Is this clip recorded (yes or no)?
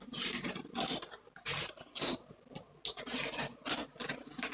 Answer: yes